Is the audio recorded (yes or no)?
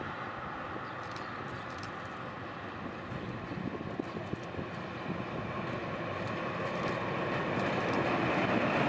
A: yes